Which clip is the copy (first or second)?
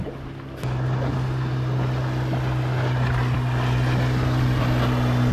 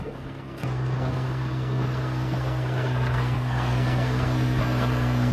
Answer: second